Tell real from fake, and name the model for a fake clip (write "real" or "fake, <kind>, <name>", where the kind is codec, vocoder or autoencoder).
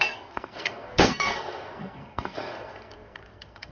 fake, codec, SNAC